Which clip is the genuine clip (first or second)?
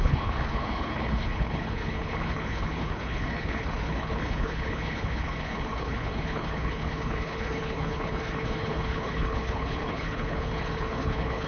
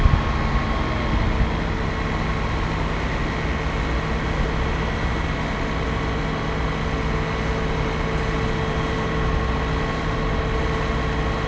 second